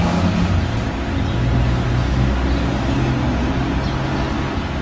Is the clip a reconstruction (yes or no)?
no